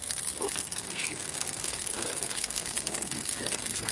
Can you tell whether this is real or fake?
fake